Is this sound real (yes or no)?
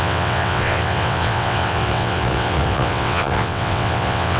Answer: no